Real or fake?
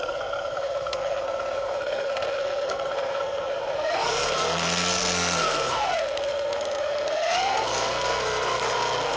fake